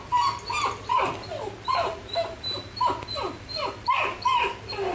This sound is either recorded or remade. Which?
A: recorded